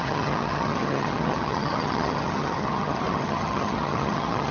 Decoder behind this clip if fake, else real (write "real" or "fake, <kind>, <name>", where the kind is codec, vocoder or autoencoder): fake, vocoder, HiFi-GAN